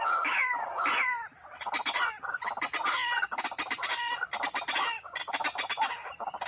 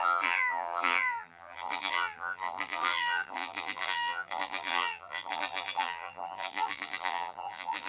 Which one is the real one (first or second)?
first